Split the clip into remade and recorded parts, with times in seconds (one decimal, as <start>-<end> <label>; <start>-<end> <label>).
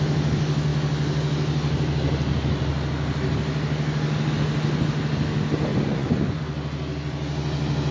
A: 0.0-5.7 recorded; 5.7-6.4 remade; 6.4-7.9 recorded